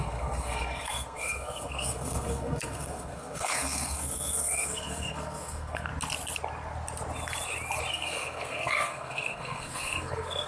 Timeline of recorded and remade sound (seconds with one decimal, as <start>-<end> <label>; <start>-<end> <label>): 0.0-5.9 remade; 5.9-7.9 recorded; 7.9-10.5 remade